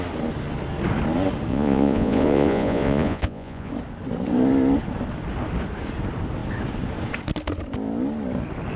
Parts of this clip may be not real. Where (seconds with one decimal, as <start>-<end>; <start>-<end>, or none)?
1.5-3.7